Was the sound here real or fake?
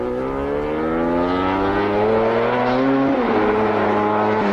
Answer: real